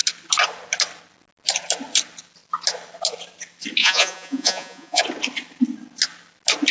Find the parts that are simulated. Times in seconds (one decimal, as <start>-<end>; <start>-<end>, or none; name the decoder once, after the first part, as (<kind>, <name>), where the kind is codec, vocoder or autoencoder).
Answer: 3.8-5.0 (vocoder, Vocos)